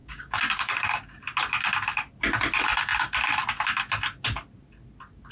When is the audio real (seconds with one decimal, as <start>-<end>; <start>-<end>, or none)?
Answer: 1.2-5.3